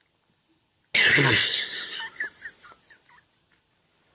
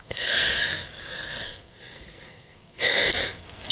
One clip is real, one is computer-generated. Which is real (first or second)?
first